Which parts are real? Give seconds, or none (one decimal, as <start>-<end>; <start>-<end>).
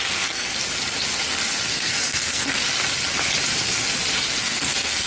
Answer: 0.5-1.7; 2.6-4.4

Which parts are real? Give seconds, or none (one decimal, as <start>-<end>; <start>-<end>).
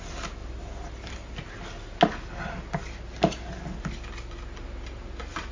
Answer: 0.0-5.5